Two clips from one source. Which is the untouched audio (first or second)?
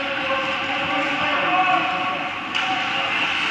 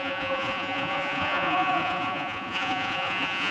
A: first